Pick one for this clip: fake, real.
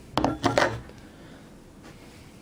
real